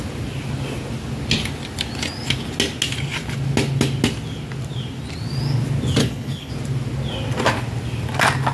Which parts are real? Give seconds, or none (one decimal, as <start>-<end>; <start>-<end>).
0.0-6.0; 6.5-8.5